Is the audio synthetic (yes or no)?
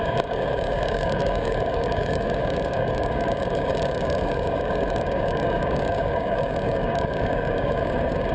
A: yes